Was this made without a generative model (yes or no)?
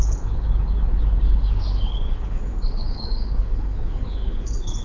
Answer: no